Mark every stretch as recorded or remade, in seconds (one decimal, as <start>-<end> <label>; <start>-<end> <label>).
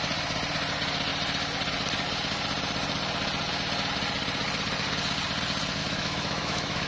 0.0-5.8 recorded; 5.8-6.9 remade